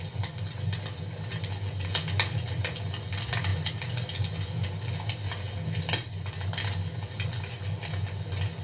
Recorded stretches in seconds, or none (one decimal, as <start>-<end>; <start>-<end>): 0.0-8.6